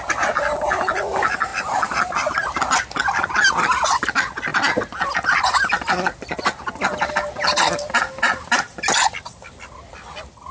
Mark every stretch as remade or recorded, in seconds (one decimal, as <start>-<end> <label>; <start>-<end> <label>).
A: 0.0-10.5 recorded